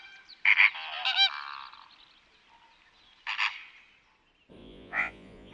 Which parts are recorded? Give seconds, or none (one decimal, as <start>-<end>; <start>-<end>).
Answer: 0.0-4.6